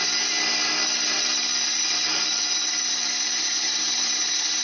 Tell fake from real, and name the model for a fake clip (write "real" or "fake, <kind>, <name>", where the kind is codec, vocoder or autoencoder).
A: real